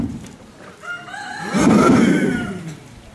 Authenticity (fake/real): fake